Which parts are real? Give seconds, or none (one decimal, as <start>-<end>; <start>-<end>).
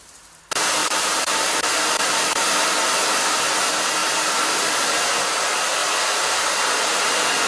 0.0-0.8; 2.5-4.0; 4.7-5.8; 7.0-7.5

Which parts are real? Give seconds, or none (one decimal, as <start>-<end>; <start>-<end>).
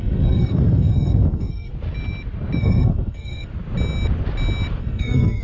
1.7-2.6; 3.5-4.8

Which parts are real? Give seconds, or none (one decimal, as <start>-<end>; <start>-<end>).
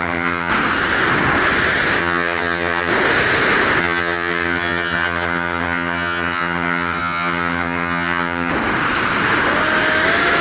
0.5-2.0; 2.9-3.8; 8.5-10.4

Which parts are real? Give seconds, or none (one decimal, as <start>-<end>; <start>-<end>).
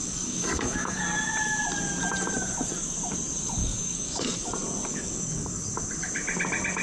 1.0-3.6; 4.5-4.9; 5.6-6.8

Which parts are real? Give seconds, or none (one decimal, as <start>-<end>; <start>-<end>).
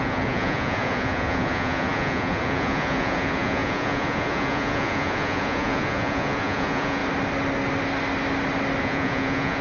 7.0-8.8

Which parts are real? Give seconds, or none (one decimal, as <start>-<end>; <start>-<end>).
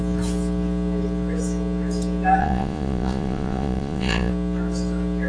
0.0-2.4; 4.3-5.3